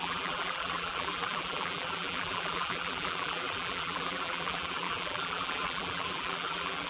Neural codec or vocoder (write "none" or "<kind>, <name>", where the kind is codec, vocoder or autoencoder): vocoder, BigVGAN v2